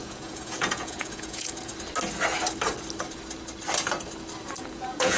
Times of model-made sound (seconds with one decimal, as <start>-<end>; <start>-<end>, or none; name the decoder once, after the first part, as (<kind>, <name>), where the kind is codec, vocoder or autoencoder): 0.0-1.7 (vocoder, Vocos); 4.6-5.2